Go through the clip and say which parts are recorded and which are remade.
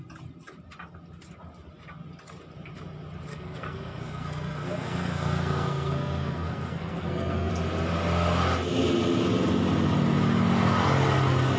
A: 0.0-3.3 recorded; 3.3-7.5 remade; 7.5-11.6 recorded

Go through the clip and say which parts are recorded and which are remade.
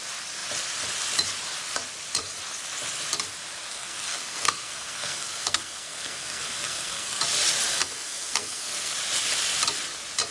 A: 0.0-3.7 recorded; 3.7-7.2 remade; 7.2-7.7 recorded; 7.7-8.9 remade; 8.9-10.3 recorded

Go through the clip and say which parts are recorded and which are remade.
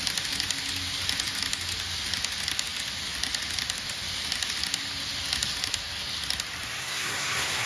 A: 0.0-6.8 recorded; 6.8-7.7 remade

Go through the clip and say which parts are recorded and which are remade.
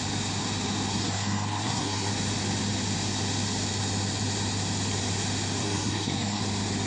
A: 0.0-0.9 recorded; 0.9-2.1 remade; 2.1-5.6 recorded; 5.6-6.4 remade; 6.4-6.9 recorded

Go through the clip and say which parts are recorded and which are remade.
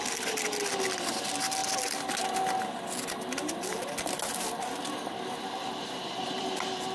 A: 0.0-6.9 recorded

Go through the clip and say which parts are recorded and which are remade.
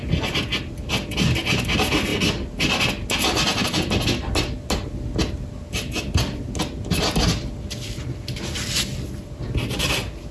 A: 0.0-10.3 recorded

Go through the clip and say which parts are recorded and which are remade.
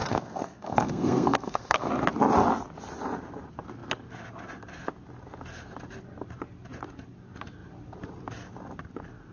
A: 0.0-1.9 remade; 1.9-9.3 recorded